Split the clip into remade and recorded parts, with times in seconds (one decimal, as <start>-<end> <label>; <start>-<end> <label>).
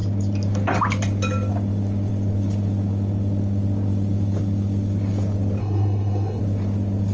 0.0-5.6 recorded; 5.6-6.4 remade; 6.4-7.1 recorded